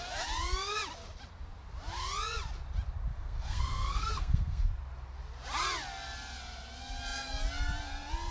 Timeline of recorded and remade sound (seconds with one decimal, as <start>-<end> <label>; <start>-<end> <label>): 0.0-3.1 recorded; 3.1-4.8 remade; 4.8-8.3 recorded